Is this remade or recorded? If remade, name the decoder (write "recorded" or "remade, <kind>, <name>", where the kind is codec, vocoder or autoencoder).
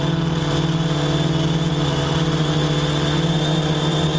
recorded